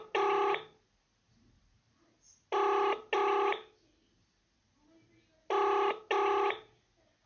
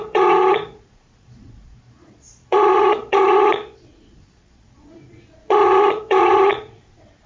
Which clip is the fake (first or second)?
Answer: second